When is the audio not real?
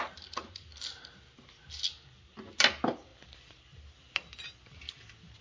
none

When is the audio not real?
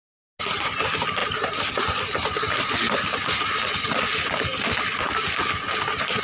none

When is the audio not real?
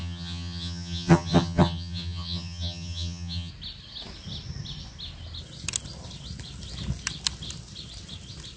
0.0-3.5 (vocoder, HiFi-GAN)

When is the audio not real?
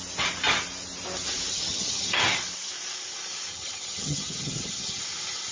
1.5-2.2 (vocoder, HiFi-GAN); 3.5-5.0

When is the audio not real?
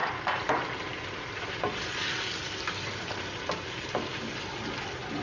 none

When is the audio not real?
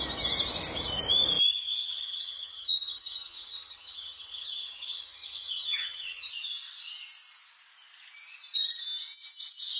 1.5-6.3 (vocoder, HiFi-GAN)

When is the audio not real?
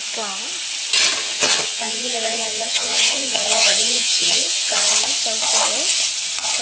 1.2-4.9 (vocoder, HiFi-GAN)